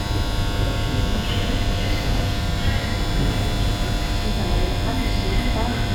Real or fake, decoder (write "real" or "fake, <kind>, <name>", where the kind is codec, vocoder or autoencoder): real